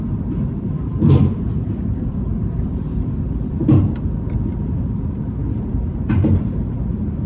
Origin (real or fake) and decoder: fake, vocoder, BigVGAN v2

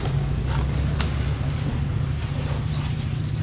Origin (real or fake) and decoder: fake, vocoder, BigVGAN v2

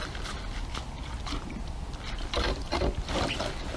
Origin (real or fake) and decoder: real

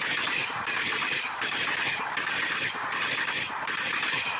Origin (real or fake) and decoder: fake, vocoder, BigVGAN v2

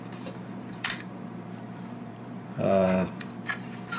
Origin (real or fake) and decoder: fake, vocoder, BigVGAN v2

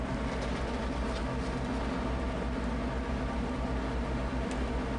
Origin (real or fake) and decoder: real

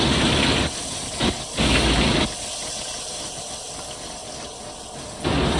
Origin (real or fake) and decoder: real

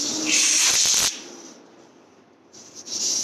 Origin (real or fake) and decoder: fake, vocoder, BigVGAN v2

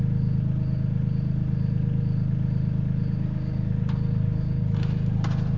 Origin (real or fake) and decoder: real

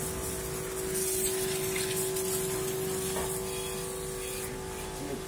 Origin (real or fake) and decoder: real